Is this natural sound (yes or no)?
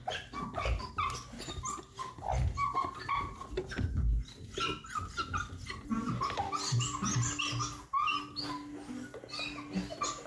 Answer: yes